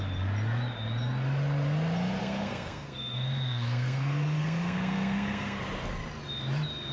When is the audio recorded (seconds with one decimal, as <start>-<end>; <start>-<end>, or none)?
0.0-2.2; 5.6-6.9